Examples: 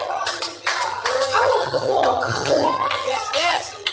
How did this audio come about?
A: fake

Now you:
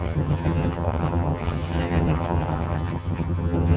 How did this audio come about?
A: fake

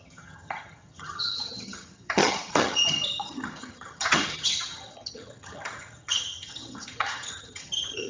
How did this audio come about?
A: fake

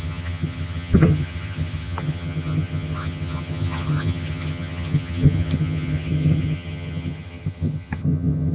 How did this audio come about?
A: fake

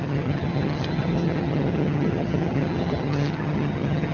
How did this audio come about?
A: fake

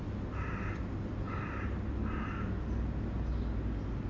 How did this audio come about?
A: real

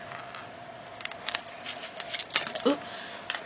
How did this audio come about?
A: real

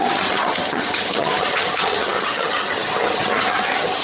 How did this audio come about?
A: fake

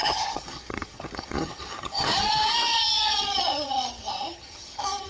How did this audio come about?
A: fake